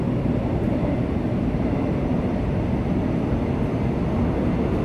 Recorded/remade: recorded